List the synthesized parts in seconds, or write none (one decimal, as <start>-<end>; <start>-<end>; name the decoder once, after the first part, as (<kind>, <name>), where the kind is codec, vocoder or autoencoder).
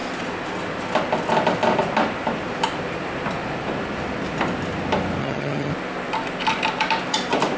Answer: 5.2-5.7 (vocoder, HiFi-GAN)